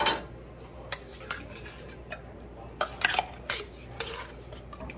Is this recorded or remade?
recorded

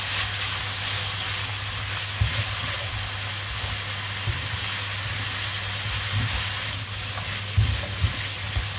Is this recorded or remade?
recorded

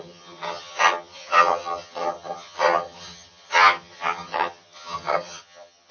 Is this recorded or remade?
remade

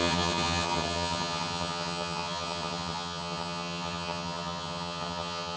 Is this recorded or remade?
remade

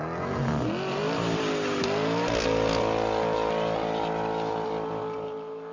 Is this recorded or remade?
recorded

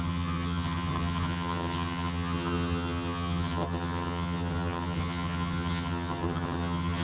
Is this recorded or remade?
remade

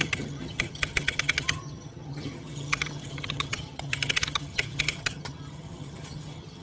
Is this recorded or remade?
remade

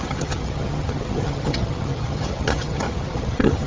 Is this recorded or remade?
remade